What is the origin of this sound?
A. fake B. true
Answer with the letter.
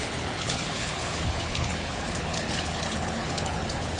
A